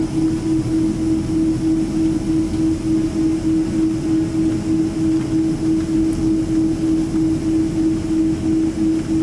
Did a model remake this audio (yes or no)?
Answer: no